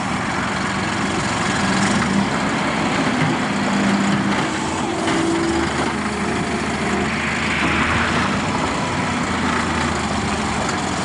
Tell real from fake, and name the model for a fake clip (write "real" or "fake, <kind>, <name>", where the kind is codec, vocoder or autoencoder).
real